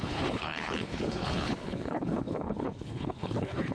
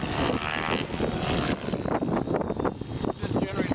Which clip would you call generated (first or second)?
first